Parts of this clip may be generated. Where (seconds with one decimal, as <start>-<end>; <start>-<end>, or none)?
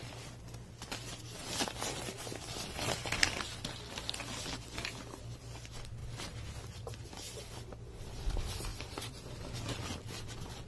none